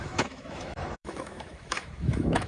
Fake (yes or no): yes